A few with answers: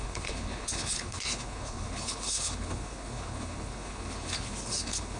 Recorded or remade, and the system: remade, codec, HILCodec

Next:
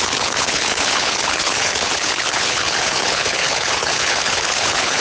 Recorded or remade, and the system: remade, codec, HILCodec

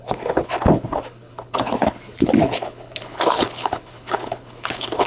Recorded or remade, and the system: remade, codec, HILCodec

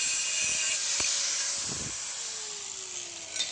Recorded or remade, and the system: recorded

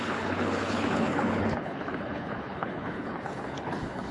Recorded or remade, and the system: remade, codec, HILCodec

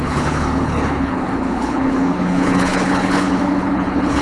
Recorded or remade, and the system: remade, codec, HILCodec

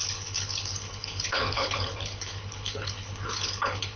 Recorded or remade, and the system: remade, codec, HILCodec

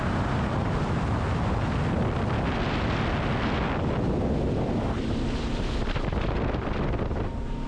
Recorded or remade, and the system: recorded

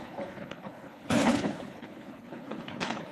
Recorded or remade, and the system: remade, codec, HILCodec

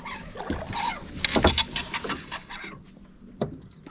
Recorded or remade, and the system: recorded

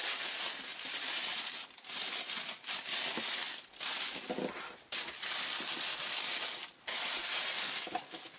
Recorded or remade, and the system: recorded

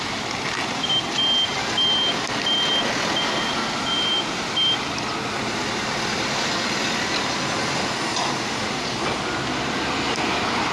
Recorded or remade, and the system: recorded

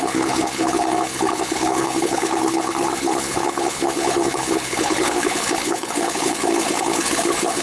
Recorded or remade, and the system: remade, codec, HILCodec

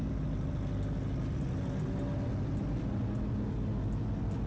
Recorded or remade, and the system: recorded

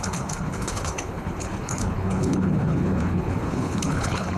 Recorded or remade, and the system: remade, codec, HILCodec